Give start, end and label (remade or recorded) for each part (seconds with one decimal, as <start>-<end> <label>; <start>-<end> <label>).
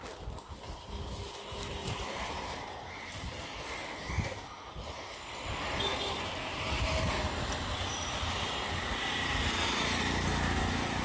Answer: 0.0-1.8 recorded; 1.8-3.2 remade; 3.2-11.0 recorded